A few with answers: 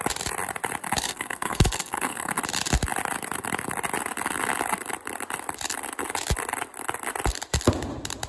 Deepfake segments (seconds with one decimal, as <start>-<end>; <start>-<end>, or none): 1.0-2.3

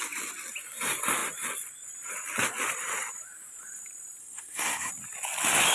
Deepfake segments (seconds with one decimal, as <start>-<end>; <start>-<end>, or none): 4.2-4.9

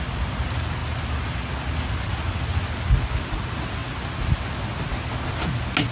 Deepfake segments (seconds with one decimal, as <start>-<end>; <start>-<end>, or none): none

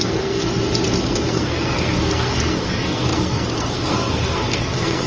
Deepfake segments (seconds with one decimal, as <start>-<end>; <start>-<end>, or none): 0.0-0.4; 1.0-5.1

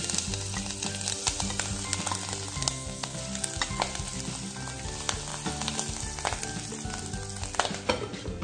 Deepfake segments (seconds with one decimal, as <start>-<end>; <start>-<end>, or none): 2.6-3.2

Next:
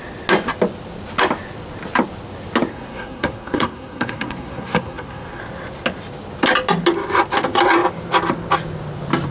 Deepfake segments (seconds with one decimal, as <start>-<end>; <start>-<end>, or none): 2.7-5.4

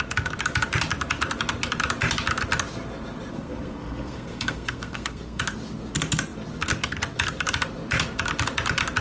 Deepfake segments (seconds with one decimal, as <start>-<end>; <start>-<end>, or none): 3.3-5.4

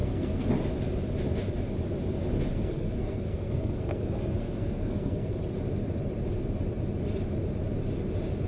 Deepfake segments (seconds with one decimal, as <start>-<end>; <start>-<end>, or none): 0.0-0.5; 2.5-5.4